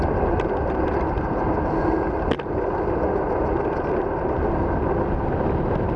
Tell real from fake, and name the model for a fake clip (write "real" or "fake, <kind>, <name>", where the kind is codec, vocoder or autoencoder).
real